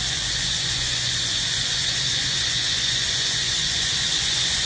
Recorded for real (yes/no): no